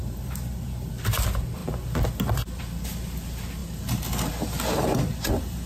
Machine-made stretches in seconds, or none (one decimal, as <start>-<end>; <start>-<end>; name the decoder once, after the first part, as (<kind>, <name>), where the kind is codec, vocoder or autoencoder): 0.0-0.9 (vocoder, BigVGAN v2)

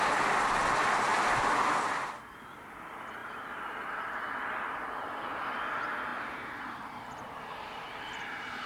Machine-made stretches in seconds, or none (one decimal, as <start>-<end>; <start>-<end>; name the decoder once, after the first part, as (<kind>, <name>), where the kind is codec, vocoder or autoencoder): 3.2-5.1 (vocoder, BigVGAN v2); 6.1-8.7